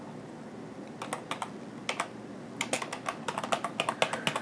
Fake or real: real